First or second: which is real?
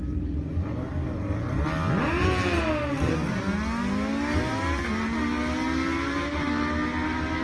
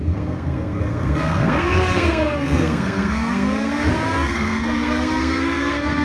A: first